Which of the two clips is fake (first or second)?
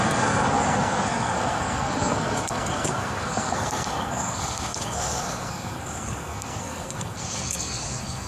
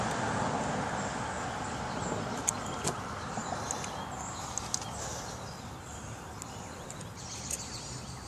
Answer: first